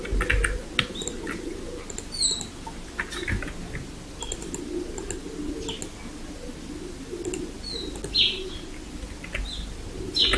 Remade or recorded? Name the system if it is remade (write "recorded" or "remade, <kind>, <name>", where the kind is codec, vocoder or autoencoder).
recorded